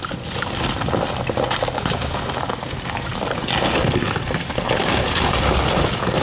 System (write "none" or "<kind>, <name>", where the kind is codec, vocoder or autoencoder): none